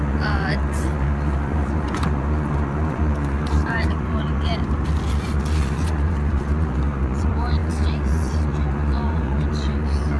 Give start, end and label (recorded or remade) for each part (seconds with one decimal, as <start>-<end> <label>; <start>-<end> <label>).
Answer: 0.0-4.5 remade; 4.5-5.1 recorded; 5.1-10.2 remade